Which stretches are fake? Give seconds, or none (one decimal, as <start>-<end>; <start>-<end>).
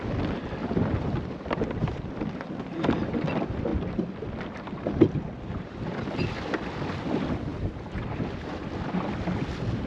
none